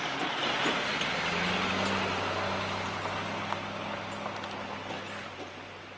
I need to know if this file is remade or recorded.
recorded